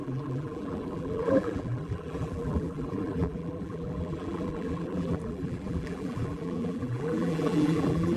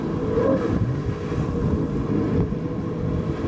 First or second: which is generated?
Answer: first